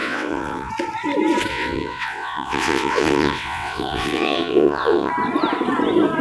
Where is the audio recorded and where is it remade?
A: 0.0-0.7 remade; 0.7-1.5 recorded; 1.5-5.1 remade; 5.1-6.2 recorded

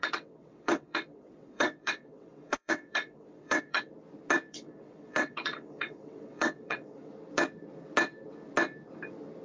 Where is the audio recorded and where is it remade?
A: 0.0-3.9 remade; 3.9-4.5 recorded; 4.5-7.1 remade; 7.1-9.4 recorded

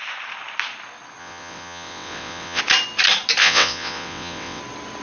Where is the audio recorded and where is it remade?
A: 0.0-1.2 recorded; 1.2-2.6 remade; 2.6-3.4 recorded; 3.4-4.6 remade; 4.6-5.0 recorded

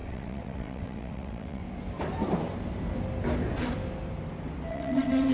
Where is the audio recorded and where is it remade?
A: 0.0-1.6 remade; 1.6-4.7 recorded; 4.7-5.3 remade

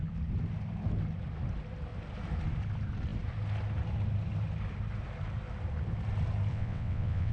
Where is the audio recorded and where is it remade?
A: 0.0-6.5 recorded; 6.5-7.3 remade